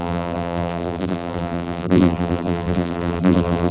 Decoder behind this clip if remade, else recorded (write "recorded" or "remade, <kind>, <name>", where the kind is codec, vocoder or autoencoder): remade, vocoder, BigVGAN v2